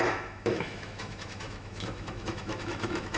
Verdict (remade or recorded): remade